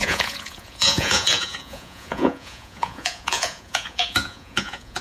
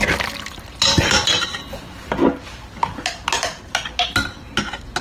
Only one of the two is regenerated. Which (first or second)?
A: first